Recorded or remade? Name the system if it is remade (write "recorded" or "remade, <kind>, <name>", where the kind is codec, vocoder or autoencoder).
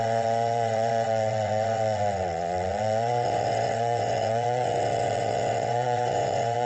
remade, vocoder, WaveNeXt